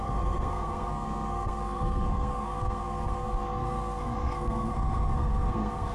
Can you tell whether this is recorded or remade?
remade